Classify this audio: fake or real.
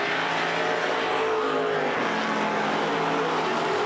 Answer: real